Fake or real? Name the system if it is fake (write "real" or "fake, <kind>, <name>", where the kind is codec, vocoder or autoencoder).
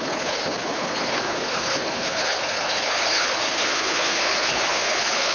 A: fake, codec, HILCodec